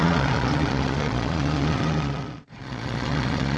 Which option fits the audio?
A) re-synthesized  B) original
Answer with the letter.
A